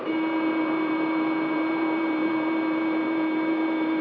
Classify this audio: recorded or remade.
remade